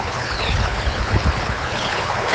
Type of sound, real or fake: fake